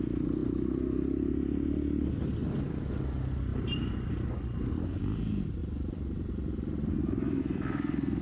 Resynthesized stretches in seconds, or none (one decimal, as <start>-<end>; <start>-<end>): none